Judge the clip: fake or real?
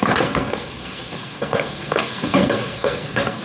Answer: fake